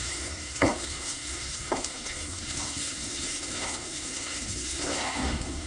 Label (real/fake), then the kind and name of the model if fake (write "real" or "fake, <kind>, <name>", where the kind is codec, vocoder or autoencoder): fake, codec, SNAC